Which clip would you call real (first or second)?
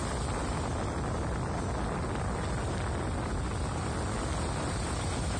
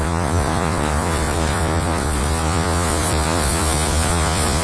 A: first